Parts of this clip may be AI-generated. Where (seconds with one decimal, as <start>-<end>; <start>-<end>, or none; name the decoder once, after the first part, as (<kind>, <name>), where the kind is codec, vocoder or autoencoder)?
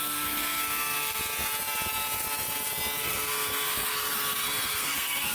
0.0-1.2 (codec, SNAC); 3.0-5.3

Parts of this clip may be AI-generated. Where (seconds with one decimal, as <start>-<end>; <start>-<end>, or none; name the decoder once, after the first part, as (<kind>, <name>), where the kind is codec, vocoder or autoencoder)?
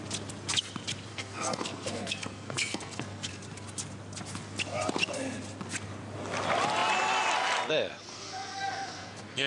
1.1-3.3 (codec, SNAC); 8.1-9.5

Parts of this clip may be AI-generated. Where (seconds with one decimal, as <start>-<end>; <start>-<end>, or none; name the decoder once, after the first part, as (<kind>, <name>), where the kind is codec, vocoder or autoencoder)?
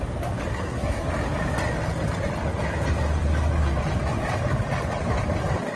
0.5-1.1 (codec, SNAC)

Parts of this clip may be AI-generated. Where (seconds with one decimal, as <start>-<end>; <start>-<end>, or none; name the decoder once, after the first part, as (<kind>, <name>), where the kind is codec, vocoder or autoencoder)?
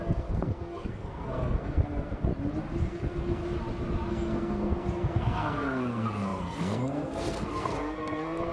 0.0-2.3 (codec, SNAC); 2.8-3.4; 4.1-8.5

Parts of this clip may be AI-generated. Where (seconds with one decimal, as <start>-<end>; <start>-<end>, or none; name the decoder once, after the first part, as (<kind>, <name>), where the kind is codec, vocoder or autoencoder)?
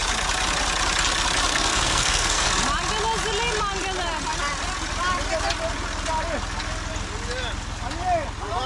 1.5-2.5 (codec, SNAC)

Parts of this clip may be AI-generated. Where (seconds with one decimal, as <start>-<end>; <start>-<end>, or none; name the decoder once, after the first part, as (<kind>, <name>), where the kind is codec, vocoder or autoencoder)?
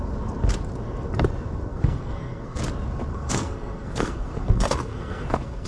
1.7-2.6 (codec, SNAC); 3.1-5.7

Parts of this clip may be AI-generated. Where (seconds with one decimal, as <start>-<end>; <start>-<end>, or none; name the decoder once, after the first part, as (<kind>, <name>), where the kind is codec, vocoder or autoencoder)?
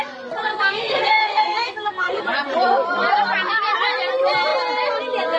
0.5-2.2 (codec, SNAC)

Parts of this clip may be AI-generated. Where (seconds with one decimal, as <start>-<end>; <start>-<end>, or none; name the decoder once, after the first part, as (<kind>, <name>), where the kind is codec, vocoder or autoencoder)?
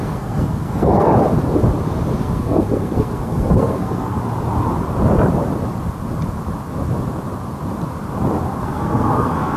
0.0-1.1 (codec, SNAC); 2.2-4.2; 8.6-9.6